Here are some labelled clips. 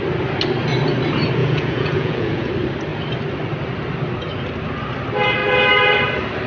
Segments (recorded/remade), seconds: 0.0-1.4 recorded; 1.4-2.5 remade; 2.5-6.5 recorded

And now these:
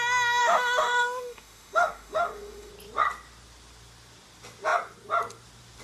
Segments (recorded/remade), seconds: 0.0-0.4 recorded; 0.4-2.7 remade; 2.7-5.8 recorded

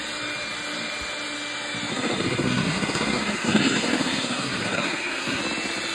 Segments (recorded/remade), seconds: 0.0-1.9 recorded; 1.9-5.4 remade; 5.4-5.9 recorded